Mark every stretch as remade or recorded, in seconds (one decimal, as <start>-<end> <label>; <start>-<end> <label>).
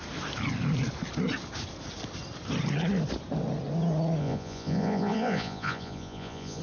0.0-4.2 recorded; 4.2-6.6 remade